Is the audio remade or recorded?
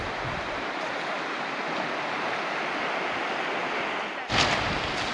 recorded